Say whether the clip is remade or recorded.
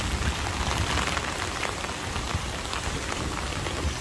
recorded